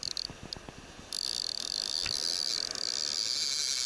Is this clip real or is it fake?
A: real